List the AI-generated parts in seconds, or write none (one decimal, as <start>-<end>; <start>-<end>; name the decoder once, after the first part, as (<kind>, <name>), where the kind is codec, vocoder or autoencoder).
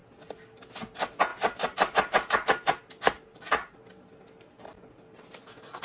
none